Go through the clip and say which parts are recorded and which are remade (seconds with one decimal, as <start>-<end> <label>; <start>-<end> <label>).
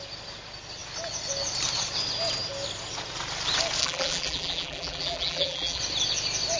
0.0-3.8 recorded; 3.8-5.8 remade; 5.8-6.6 recorded